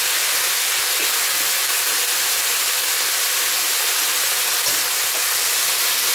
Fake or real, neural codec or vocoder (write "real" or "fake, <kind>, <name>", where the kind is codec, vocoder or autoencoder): real